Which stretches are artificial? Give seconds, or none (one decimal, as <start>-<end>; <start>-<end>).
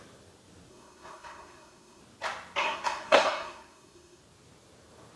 0.7-2.0; 2.6-4.2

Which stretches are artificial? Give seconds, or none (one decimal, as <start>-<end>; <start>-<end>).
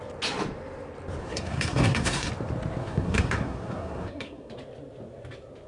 1.2-2.3; 2.8-4.5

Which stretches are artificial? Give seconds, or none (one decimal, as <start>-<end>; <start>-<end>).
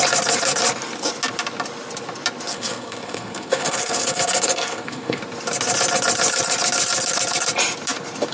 2.5-5.2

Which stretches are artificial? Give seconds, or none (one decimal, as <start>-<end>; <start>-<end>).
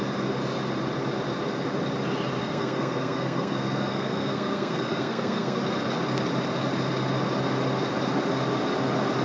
2.4-5.6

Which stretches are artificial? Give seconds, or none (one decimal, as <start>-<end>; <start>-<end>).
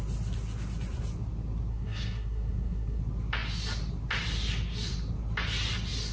1.7-3.0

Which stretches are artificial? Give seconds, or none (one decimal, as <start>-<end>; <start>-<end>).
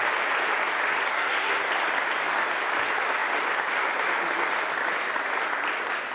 1.1-1.7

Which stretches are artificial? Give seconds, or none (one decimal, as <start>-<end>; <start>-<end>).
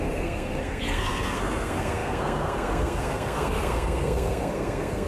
0.0-5.1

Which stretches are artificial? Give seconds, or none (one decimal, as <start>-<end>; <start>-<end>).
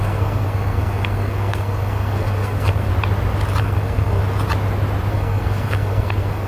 0.0-2.9; 3.6-4.2; 5.1-6.5